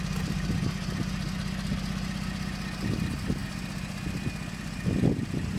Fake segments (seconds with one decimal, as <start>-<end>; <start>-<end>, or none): none